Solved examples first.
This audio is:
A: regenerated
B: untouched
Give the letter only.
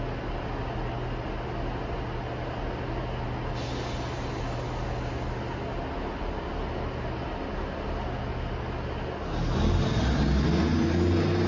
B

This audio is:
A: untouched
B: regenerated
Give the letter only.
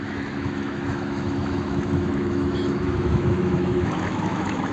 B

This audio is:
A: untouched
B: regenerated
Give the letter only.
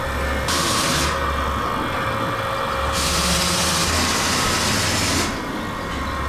A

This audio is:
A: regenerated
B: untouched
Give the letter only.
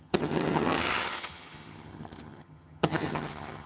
A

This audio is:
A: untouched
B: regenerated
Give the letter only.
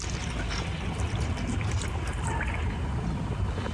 A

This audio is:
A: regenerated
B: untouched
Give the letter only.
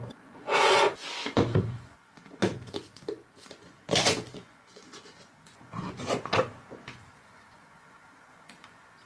A